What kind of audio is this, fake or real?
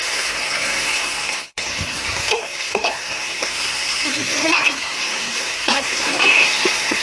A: fake